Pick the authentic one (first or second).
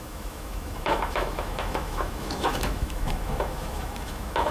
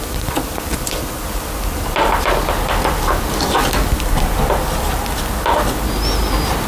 second